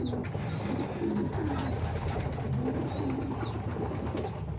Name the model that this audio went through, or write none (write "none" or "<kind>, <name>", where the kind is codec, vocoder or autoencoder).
none